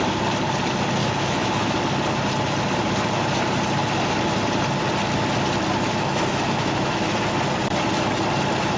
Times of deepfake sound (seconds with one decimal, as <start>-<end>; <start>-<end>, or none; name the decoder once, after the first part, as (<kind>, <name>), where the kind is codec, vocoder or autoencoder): 1.0-1.8 (autoencoder, DAC-VAE); 6.1-7.1